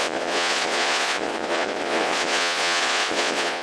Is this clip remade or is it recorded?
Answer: remade